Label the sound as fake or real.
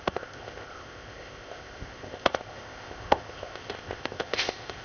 fake